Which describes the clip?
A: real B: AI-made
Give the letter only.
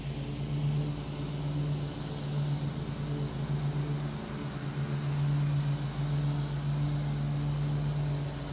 A